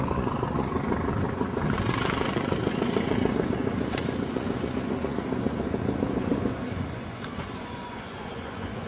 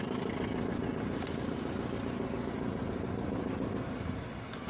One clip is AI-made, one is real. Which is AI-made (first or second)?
first